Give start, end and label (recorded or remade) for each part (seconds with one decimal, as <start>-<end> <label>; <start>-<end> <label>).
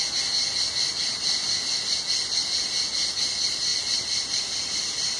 0.0-5.2 recorded